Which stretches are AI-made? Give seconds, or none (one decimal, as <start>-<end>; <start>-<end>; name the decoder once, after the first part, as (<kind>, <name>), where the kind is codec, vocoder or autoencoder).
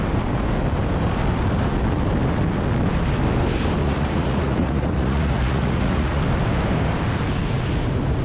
3.8-6.2 (vocoder, Vocos)